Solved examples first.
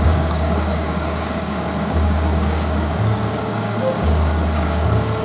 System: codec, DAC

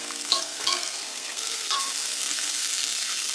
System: codec, SNAC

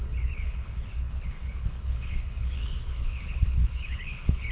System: codec, HILCodec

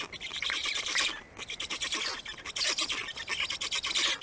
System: none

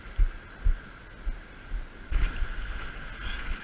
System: none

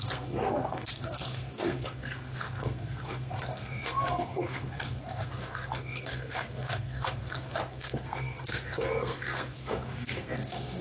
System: codec, SNAC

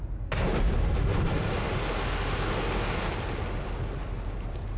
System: none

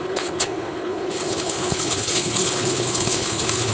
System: codec, HILCodec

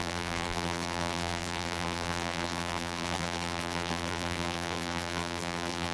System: vocoder, BigVGAN v2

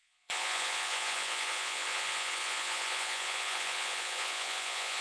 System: vocoder, Vocos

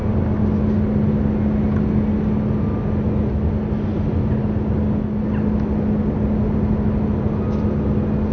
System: none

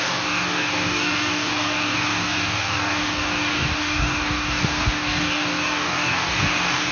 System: codec, DAC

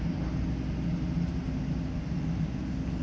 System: none